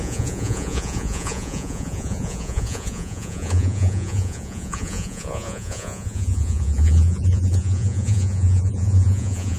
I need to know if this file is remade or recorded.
remade